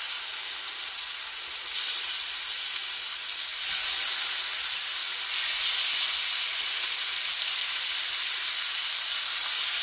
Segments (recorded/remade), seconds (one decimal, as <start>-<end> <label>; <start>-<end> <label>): 0.0-9.8 recorded